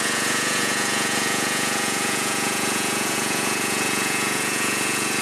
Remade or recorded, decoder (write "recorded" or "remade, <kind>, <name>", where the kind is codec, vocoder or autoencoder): remade, vocoder, Vocos